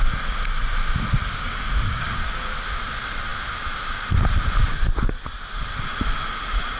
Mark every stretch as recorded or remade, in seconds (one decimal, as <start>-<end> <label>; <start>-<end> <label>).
0.0-1.3 recorded; 1.3-2.5 remade; 2.5-6.8 recorded